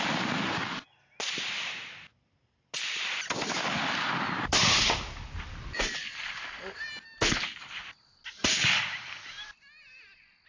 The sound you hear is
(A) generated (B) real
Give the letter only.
B